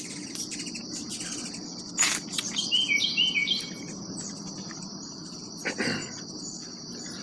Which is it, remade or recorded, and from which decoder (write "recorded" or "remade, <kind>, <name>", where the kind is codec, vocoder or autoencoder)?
recorded